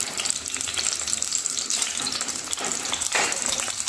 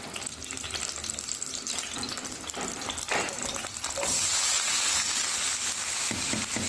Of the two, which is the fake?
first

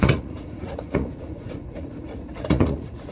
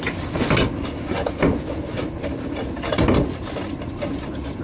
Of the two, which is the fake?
first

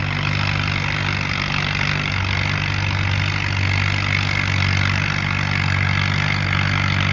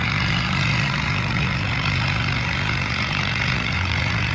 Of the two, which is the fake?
second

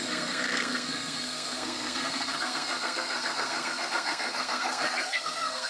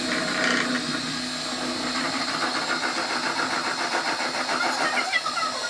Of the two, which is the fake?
first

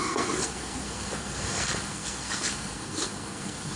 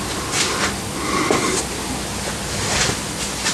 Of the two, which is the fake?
first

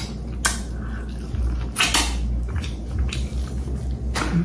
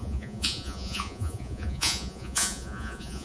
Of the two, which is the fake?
second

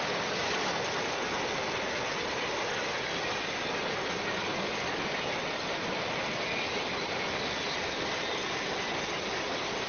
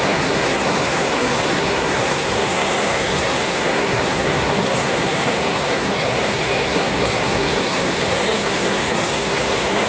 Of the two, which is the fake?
second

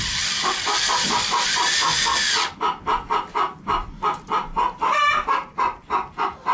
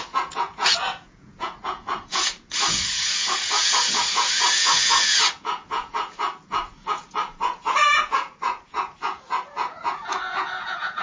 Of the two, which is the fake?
second